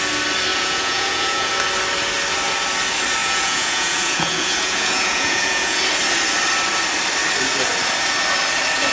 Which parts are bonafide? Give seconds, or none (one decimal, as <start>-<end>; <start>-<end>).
0.0-0.5; 1.5-3.2; 5.8-8.9